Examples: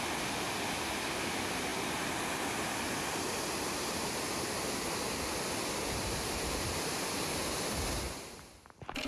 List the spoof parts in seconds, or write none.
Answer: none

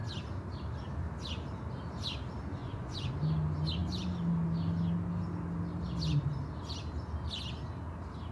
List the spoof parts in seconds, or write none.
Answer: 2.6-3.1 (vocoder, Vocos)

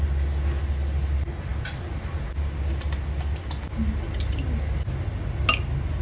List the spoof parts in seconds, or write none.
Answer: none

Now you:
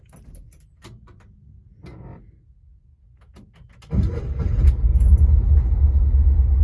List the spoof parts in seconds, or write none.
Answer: none